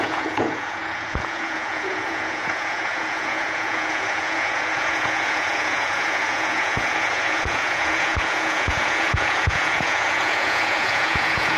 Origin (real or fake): fake